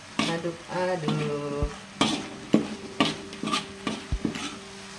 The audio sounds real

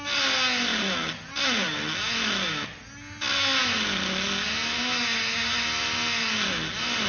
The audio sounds real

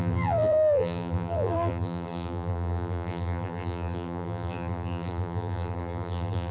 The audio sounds fake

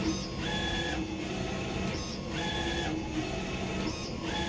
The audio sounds real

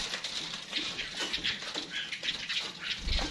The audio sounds fake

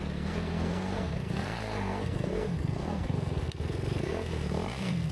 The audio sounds fake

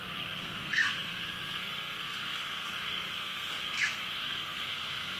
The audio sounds fake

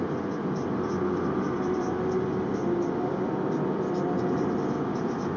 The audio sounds real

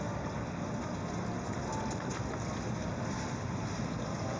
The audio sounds real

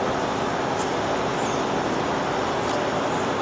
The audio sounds real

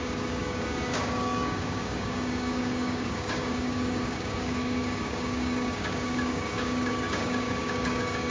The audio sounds fake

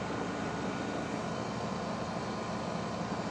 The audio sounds real